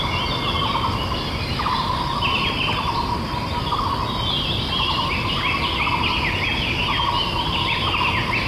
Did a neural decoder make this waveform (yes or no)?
no